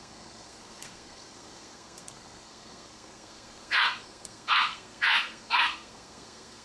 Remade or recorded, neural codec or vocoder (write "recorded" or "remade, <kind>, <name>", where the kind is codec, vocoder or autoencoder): remade, codec, SNAC